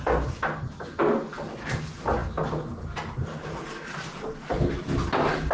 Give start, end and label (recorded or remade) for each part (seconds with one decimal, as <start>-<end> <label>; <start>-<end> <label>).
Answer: 0.0-5.5 recorded